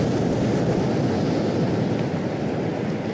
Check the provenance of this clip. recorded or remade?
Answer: recorded